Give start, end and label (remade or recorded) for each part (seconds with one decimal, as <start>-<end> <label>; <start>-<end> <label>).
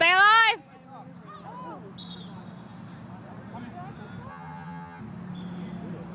0.0-4.3 recorded; 4.3-5.0 remade; 5.0-6.1 recorded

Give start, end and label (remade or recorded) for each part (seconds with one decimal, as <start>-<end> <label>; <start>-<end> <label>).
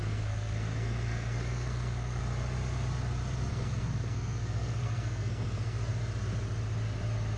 0.0-2.2 remade; 2.2-3.5 recorded; 3.5-5.9 remade; 5.9-7.4 recorded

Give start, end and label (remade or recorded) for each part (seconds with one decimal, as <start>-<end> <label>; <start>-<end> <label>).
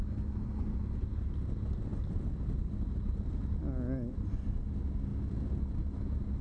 0.0-6.4 recorded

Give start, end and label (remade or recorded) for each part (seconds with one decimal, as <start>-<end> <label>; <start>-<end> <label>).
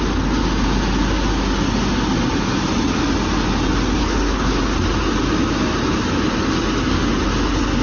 0.0-4.0 recorded; 4.0-4.6 remade; 4.6-7.8 recorded